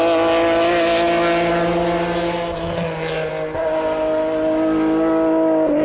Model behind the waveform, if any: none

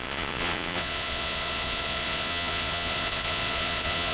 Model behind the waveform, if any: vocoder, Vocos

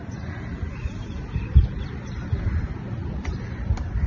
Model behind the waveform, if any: vocoder, BigVGAN v2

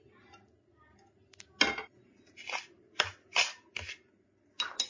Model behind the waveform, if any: none